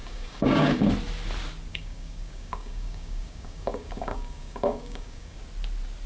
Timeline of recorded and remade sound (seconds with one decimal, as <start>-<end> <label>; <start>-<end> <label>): 0.0-0.9 remade; 0.9-1.7 recorded; 1.7-5.4 remade; 5.4-6.1 recorded